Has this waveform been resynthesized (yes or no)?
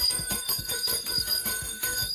yes